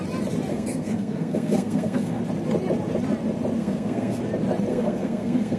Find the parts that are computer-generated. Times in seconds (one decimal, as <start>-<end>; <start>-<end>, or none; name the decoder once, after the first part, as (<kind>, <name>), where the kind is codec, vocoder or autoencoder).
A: 0.5-2.2 (codec, SNAC); 3.6-4.2; 4.7-5.6